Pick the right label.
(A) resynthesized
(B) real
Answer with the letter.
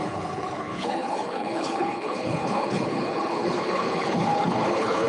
A